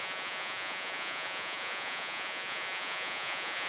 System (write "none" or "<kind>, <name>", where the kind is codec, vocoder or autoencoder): vocoder, Vocos